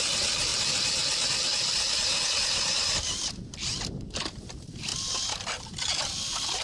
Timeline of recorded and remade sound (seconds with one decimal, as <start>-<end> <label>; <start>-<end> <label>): 0.0-0.5 remade; 0.5-2.3 recorded; 2.3-4.9 remade; 4.9-5.6 recorded; 5.6-6.6 remade